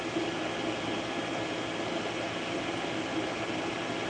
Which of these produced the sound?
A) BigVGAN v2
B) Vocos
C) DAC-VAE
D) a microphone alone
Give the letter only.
D